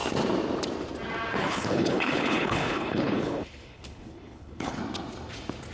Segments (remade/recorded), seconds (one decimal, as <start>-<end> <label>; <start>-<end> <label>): 0.0-1.4 recorded; 1.4-4.8 remade; 4.8-5.7 recorded